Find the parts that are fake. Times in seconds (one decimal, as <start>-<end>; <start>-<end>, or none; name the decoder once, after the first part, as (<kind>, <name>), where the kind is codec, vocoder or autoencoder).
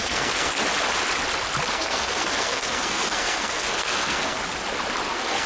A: 0.0-0.6 (codec, SNAC); 1.7-4.4; 5.1-5.5